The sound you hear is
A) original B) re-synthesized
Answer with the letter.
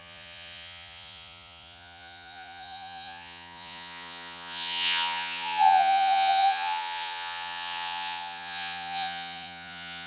B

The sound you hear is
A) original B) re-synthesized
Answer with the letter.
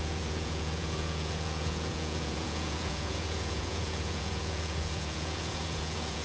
B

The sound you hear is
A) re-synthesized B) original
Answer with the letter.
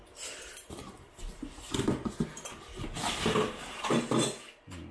B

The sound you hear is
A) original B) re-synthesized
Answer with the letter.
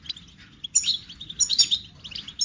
A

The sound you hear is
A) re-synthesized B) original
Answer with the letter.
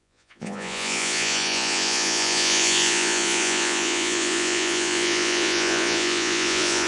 A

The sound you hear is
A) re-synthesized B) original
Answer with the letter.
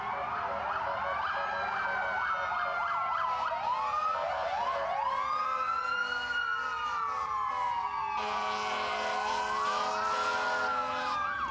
B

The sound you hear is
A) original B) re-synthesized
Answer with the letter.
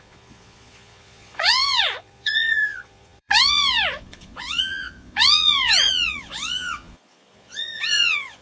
B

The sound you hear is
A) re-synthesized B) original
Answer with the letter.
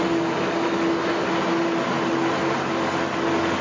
B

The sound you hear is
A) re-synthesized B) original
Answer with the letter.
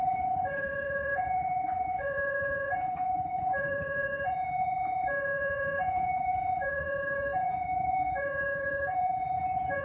A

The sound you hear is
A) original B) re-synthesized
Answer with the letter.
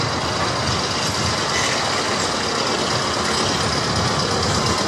A